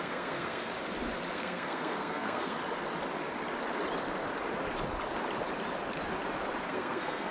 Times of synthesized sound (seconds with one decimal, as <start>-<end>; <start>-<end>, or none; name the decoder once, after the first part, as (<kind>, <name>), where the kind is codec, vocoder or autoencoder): 0.0-0.7 (codec, SNAC); 1.3-2.6; 6.7-7.3